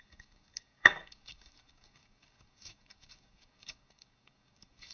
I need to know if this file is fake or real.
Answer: fake